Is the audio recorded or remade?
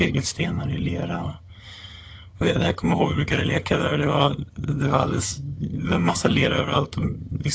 remade